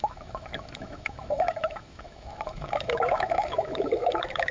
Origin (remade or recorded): remade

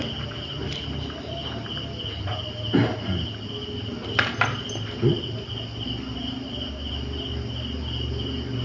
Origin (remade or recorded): recorded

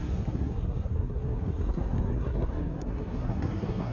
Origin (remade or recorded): remade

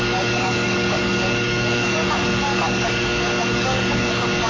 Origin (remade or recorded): remade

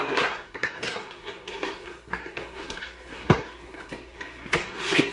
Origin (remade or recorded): remade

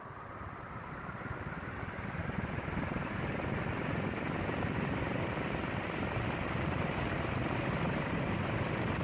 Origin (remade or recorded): recorded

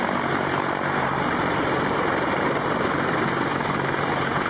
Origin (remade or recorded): remade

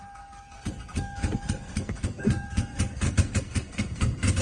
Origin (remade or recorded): remade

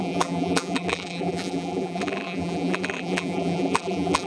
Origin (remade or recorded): remade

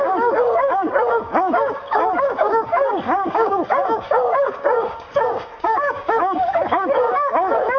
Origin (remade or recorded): remade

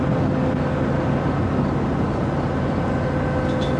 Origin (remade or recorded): recorded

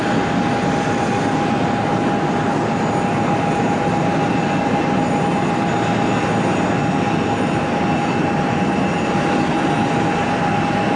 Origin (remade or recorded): recorded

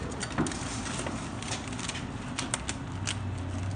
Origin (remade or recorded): recorded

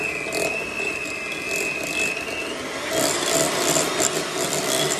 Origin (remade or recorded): recorded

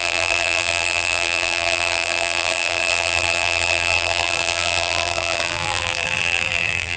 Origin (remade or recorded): remade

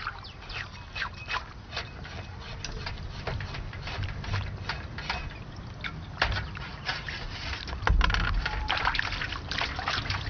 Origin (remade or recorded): recorded